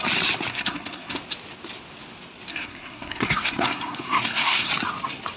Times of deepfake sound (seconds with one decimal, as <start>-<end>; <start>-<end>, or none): 0.5-1.2; 2.5-4.7